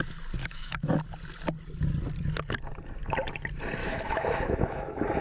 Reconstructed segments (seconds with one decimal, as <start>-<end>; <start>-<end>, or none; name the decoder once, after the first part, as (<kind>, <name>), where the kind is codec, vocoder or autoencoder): 0.4-1.0 (autoencoder, DAC-VAE); 3.8-5.2